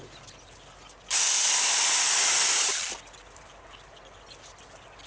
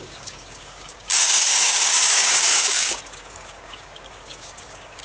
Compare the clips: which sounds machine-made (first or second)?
second